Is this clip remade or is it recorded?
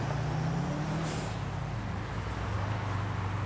recorded